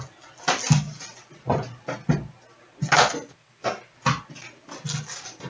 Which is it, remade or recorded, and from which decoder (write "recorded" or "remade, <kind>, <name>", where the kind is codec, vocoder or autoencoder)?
recorded